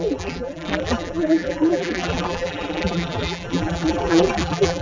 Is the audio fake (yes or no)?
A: yes